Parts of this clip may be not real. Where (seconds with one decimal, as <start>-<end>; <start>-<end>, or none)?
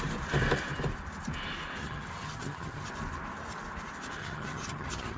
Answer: 1.8-2.9; 4.2-5.2